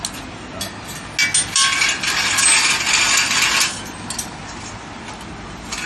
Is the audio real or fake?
real